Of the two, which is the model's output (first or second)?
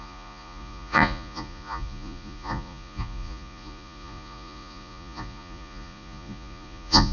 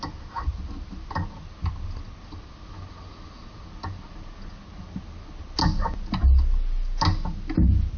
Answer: first